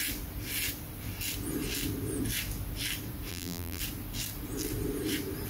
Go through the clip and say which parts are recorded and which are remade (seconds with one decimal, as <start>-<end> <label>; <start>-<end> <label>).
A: 0.0-3.3 recorded; 3.3-3.8 remade; 3.8-5.5 recorded